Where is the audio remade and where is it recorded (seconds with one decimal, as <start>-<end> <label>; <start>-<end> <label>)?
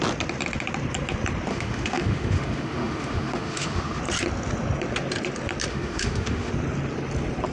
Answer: 0.0-1.5 recorded; 1.5-4.0 remade; 4.0-5.7 recorded; 5.7-6.5 remade; 6.5-7.5 recorded